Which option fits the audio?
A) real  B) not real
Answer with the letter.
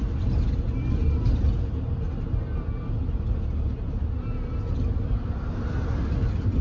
A